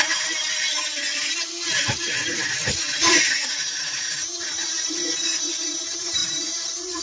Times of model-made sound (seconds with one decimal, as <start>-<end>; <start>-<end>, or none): none